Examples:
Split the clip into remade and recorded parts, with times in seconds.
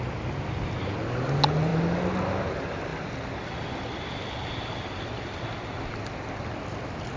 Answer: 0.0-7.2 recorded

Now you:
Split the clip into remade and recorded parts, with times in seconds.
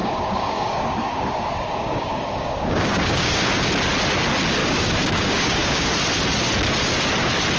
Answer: 0.0-3.7 remade; 3.7-4.6 recorded; 4.6-5.9 remade; 5.9-7.6 recorded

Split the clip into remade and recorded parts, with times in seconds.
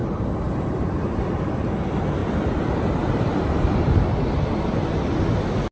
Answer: 0.0-1.4 remade; 1.4-2.2 recorded; 2.2-4.1 remade; 4.1-5.7 recorded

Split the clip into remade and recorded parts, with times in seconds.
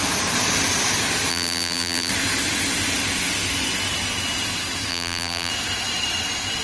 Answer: 0.0-1.3 recorded; 1.3-2.1 remade; 2.1-4.9 recorded; 4.9-5.5 remade; 5.5-6.6 recorded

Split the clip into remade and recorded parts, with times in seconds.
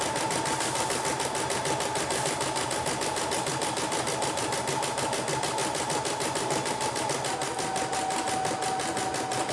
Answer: 0.0-9.5 recorded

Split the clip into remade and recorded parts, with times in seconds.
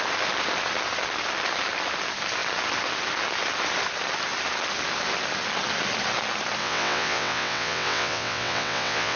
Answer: 0.0-6.6 recorded; 6.6-9.2 remade